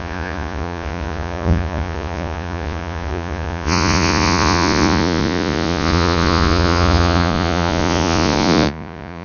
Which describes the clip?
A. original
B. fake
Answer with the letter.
B